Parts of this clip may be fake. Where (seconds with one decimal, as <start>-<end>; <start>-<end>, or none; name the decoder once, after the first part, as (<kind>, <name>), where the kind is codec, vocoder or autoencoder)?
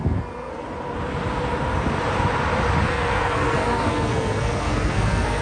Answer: 0.0-0.6 (codec, SNAC); 2.9-5.4